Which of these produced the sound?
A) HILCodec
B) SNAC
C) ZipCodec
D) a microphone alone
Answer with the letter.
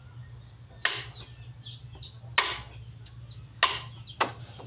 D